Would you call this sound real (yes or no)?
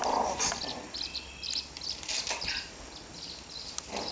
yes